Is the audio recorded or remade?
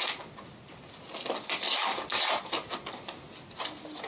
recorded